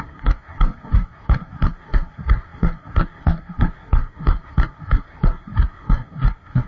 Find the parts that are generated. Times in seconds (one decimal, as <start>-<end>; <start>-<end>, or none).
0.0-6.7